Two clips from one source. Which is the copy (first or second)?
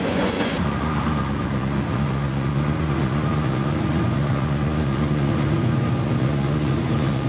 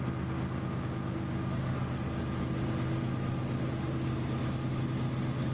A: first